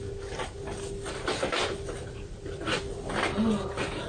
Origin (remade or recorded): recorded